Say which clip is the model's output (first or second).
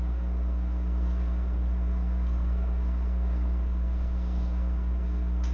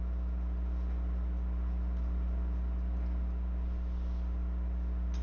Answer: first